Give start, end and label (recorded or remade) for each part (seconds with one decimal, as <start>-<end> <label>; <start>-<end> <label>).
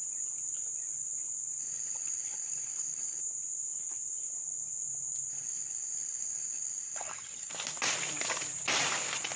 0.0-1.6 recorded; 1.6-3.2 remade; 3.2-5.3 recorded; 5.3-7.5 remade; 7.5-9.4 recorded